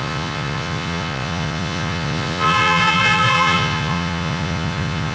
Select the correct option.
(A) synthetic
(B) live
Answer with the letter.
A